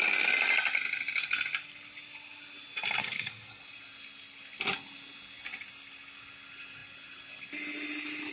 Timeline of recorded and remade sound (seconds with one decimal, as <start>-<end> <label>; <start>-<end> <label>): 0.0-3.0 recorded; 3.0-3.6 remade; 3.6-8.3 recorded

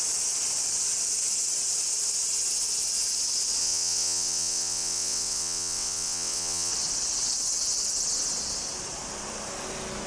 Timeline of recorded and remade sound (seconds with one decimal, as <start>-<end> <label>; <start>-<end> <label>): 0.0-3.6 recorded; 3.6-6.7 remade; 6.7-10.1 recorded

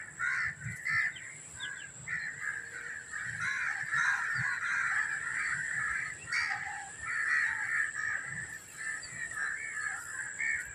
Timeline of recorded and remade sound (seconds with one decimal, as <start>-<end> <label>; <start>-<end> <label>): 0.0-10.7 recorded

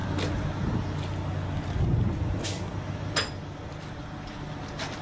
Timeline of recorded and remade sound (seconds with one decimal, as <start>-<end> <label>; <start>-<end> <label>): 0.0-5.0 recorded

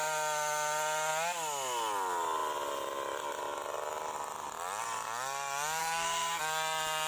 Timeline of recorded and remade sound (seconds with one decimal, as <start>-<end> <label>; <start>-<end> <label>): 0.0-5.8 recorded; 5.8-6.4 remade; 6.4-7.1 recorded